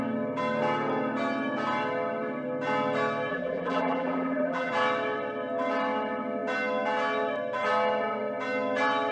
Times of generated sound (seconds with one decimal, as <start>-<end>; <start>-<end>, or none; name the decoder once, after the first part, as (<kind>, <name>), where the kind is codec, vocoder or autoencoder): 3.3-4.7 (vocoder, BigVGAN v2)